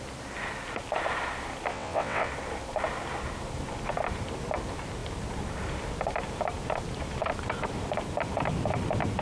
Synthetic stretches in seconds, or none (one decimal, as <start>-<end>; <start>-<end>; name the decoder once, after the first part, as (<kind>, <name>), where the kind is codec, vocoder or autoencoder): 1.7-2.3 (vocoder, WaveNeXt)